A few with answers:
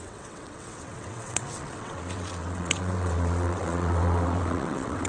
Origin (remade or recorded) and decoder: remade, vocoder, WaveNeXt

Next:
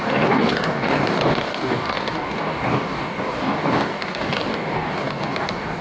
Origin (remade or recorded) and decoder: remade, codec, DAC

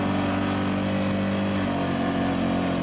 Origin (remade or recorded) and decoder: recorded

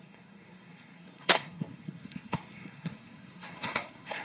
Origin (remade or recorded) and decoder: remade, codec, SNAC